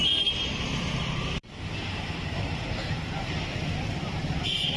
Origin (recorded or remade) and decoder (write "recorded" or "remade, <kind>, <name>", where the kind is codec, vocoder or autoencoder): remade, vocoder, BigVGAN v2